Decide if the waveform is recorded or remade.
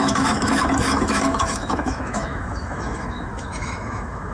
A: remade